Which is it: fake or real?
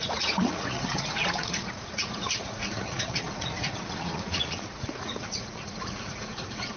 fake